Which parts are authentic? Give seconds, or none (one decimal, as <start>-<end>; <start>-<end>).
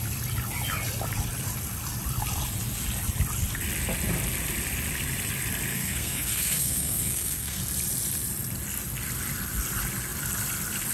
0.0-5.7; 7.6-10.9